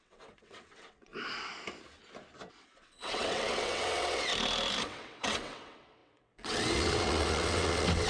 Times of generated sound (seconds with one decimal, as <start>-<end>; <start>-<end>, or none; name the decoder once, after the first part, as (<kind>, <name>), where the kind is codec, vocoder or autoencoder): 0.0-1.1 (vocoder, WaveNeXt); 2.5-4.3; 4.8-8.1